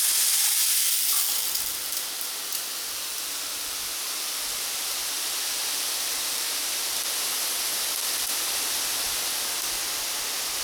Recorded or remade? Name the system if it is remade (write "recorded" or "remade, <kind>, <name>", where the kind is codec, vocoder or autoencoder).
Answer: recorded